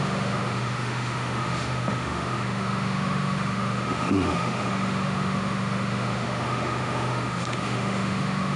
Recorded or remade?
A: remade